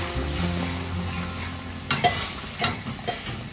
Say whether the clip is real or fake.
real